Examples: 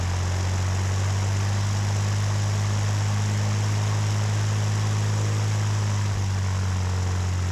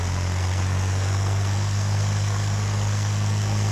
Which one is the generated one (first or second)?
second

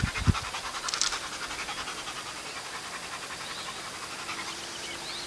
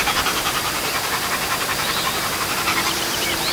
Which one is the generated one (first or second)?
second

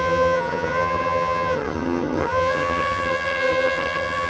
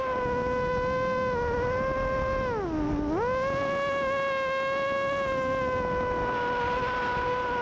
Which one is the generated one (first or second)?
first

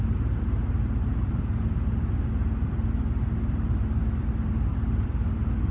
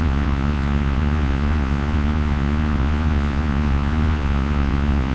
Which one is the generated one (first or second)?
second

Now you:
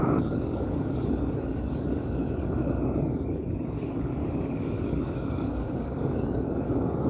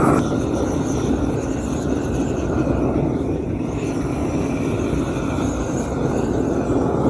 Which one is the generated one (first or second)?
first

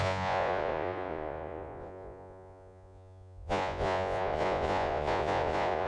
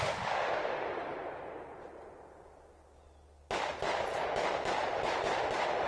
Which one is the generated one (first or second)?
first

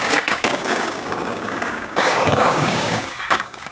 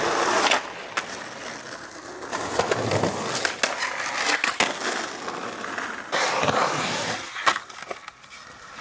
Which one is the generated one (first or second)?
first